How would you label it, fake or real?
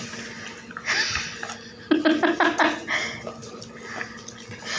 real